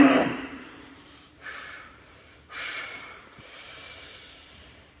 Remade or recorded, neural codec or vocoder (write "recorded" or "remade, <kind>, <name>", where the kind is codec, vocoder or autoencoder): remade, vocoder, BigVGAN v2